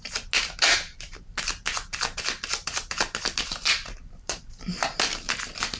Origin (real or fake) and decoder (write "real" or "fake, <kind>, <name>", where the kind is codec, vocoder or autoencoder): real